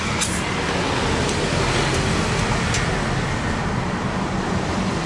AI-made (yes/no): no